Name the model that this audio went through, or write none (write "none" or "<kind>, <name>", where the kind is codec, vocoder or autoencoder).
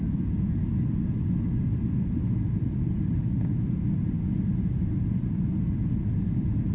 none